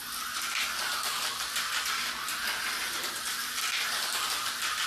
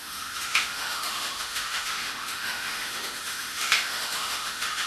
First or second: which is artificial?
second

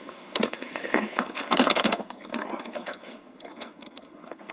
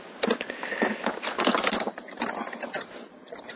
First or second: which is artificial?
first